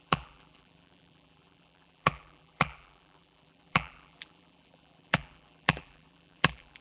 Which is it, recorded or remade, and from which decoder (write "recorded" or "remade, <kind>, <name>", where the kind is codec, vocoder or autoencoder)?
remade, vocoder, BigVGAN v2